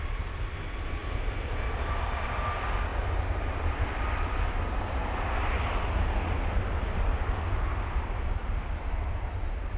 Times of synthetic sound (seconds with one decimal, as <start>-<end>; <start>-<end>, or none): none